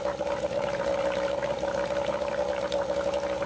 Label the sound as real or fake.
real